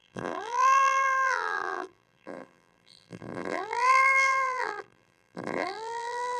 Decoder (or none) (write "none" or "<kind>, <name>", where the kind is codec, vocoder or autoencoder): vocoder, BigVGAN v2